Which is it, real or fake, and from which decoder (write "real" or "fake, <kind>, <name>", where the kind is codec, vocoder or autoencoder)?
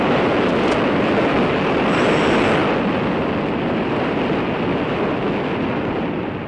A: real